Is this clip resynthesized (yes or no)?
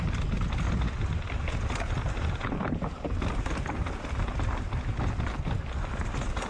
no